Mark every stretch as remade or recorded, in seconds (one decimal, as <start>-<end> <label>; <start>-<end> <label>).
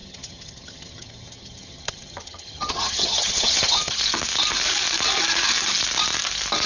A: 0.0-4.0 remade; 4.0-6.7 recorded